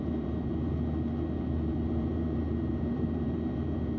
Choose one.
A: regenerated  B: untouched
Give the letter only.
A